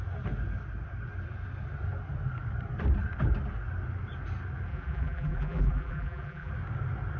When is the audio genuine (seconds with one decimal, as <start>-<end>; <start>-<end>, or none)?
0.0-4.7; 6.5-7.2